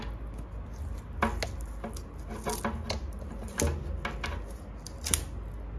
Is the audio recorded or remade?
recorded